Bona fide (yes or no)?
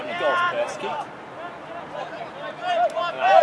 yes